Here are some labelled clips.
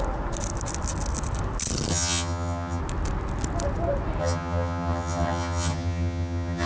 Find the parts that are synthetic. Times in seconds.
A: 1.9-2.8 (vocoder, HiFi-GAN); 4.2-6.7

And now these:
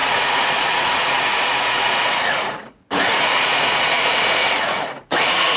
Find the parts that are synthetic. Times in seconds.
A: 0.0-5.6 (vocoder, Vocos)